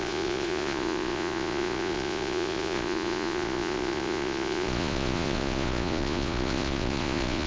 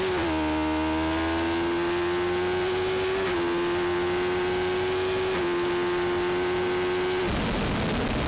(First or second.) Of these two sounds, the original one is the second